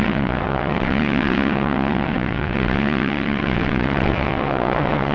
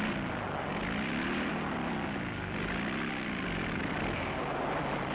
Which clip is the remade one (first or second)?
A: first